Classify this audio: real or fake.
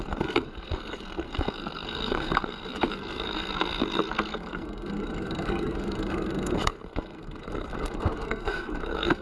fake